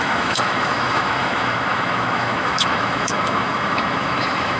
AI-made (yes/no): yes